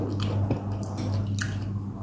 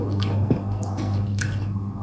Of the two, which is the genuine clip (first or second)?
first